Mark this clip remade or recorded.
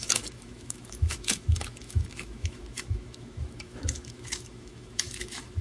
remade